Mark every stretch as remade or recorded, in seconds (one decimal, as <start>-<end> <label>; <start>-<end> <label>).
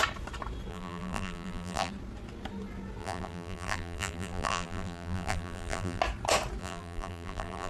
0.0-0.7 recorded; 0.7-1.9 remade; 1.9-3.0 recorded; 3.0-6.0 remade; 6.0-6.6 recorded; 6.6-7.7 remade